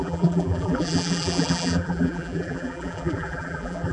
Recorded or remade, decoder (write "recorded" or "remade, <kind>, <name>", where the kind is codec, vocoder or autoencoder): remade, vocoder, BigVGAN v2